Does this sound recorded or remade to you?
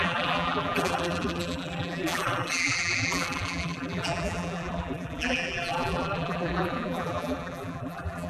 remade